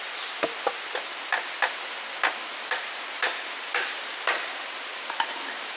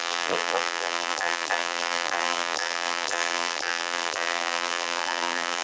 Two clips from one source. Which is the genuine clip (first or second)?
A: first